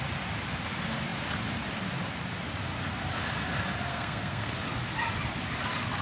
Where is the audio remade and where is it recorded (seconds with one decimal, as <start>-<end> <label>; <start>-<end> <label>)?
0.0-3.9 recorded; 3.9-4.5 remade; 4.5-6.0 recorded